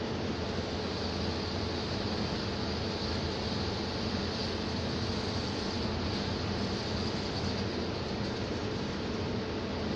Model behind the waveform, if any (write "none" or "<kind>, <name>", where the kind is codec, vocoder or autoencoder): none